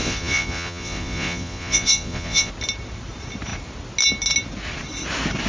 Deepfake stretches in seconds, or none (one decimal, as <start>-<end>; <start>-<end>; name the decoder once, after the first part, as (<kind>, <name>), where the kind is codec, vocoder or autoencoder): 0.0-2.5 (vocoder, Vocos)